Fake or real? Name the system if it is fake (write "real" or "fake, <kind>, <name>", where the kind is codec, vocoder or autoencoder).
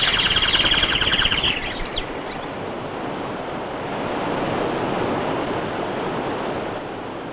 real